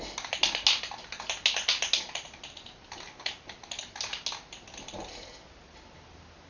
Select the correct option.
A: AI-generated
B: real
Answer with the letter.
B